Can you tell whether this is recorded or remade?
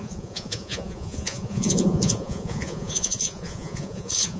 remade